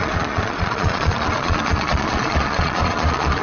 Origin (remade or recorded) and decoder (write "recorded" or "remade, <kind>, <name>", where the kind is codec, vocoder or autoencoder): remade, vocoder, Vocos